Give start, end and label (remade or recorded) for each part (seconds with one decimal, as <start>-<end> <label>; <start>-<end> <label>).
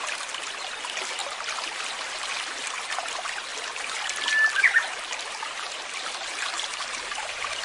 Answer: 0.0-6.7 recorded; 6.7-7.6 remade